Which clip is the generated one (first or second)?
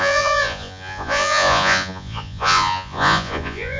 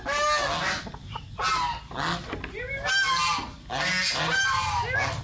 first